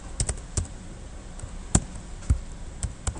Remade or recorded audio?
recorded